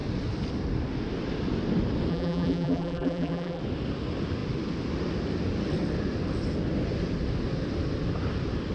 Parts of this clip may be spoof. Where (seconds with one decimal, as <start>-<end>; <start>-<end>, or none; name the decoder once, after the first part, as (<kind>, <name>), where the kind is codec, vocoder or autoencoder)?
2.1-3.6 (vocoder, BigVGAN v2)